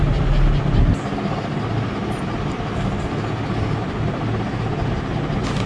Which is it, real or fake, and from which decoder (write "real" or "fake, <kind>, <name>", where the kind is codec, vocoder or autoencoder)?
real